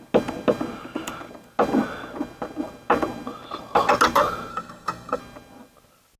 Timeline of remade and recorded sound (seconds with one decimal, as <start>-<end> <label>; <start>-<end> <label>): 0.0-4.5 recorded; 4.5-5.2 remade; 5.2-6.2 recorded